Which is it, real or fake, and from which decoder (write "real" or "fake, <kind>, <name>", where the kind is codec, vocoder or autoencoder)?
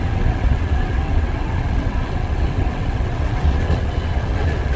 fake, vocoder, WaveNeXt